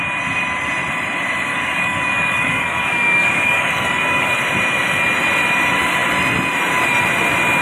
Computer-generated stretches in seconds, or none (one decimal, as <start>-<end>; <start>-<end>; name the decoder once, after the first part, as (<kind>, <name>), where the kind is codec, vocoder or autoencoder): 1.5-4.4 (codec, DAC)